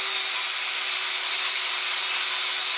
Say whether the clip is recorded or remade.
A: recorded